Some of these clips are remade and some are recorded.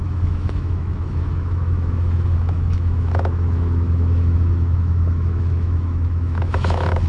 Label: remade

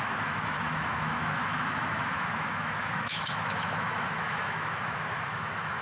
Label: remade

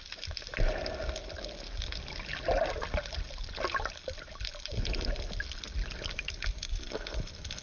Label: recorded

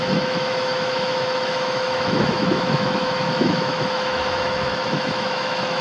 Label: remade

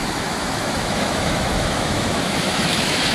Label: remade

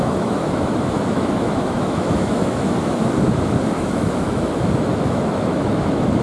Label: remade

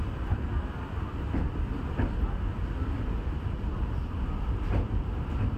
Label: recorded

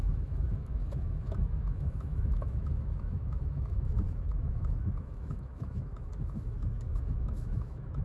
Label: remade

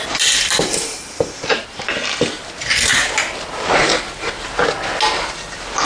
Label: recorded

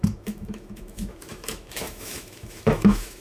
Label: remade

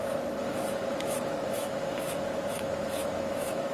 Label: remade